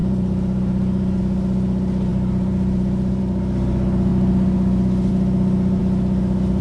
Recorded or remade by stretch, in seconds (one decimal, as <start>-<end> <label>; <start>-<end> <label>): 0.0-1.2 remade; 1.2-2.1 recorded; 2.1-3.2 remade; 3.2-6.6 recorded

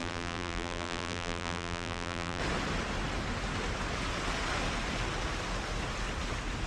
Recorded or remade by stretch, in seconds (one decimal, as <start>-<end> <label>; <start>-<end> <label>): 0.0-2.4 remade; 2.4-6.7 recorded

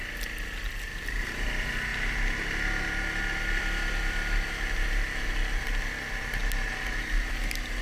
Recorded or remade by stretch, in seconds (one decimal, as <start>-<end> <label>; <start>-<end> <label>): 0.0-1.9 remade; 1.9-3.4 recorded; 3.4-6.4 remade; 6.4-7.0 recorded; 7.0-7.8 remade

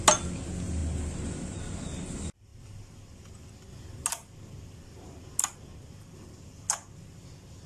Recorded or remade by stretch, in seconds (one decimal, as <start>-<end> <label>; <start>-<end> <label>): 0.0-2.5 recorded; 2.5-3.5 remade; 3.5-7.7 recorded

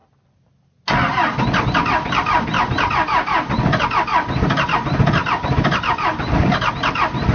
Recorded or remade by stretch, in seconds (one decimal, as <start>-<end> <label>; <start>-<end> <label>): 0.0-5.2 recorded; 5.2-6.7 remade; 6.7-7.3 recorded

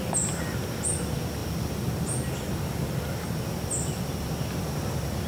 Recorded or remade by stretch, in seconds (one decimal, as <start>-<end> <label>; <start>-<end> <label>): 0.0-5.3 recorded